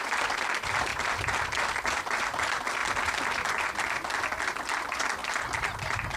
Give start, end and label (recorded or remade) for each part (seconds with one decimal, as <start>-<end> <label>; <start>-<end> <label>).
0.0-0.9 remade; 0.9-2.0 recorded; 2.0-2.8 remade; 2.8-4.4 recorded; 4.4-5.2 remade; 5.2-6.2 recorded